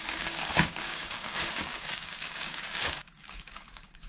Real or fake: fake